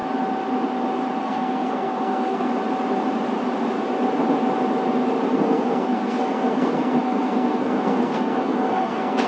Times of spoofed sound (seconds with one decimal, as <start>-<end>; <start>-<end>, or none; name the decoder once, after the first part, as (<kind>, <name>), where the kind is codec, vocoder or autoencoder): 1.2-2.5 (codec, SNAC); 5.3-9.3